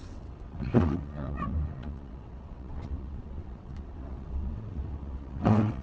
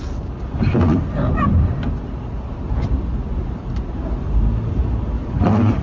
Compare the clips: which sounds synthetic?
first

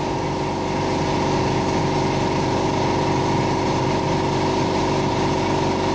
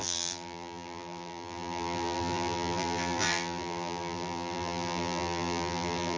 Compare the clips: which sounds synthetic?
second